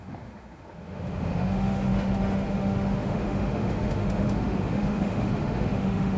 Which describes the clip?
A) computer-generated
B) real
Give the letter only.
A